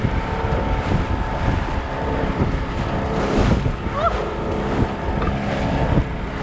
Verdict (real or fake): real